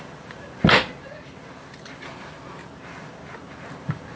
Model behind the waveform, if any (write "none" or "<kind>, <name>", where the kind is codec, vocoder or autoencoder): none